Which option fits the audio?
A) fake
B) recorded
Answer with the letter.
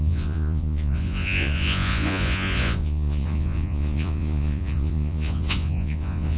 A